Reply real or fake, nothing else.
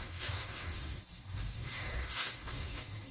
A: fake